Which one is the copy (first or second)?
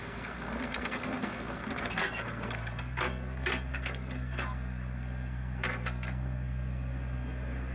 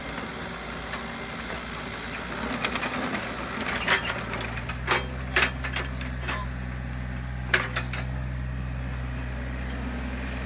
first